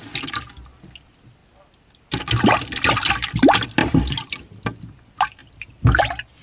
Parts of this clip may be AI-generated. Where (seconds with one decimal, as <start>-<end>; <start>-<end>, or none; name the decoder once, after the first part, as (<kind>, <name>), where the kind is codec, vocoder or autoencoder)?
3.8-4.3 (vocoder, BigVGAN v2); 5.4-6.0